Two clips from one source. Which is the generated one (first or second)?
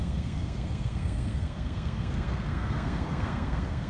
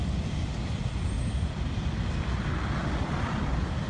first